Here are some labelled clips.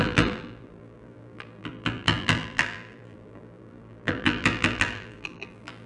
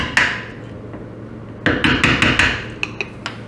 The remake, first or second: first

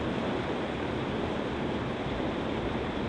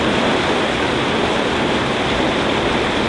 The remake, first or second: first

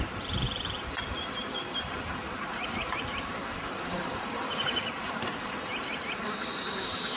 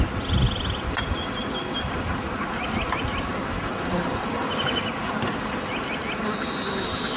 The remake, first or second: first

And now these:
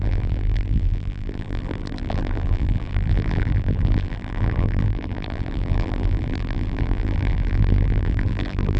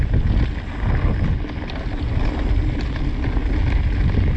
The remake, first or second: first